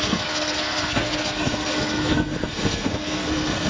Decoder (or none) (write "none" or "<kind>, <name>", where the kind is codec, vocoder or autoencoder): codec, SNAC